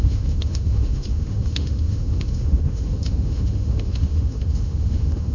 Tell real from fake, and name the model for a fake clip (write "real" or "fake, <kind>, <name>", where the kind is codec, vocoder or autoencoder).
fake, autoencoder, DAC-VAE